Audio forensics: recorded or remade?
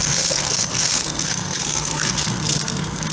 remade